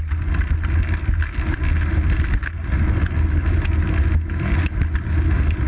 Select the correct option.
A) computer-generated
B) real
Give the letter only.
B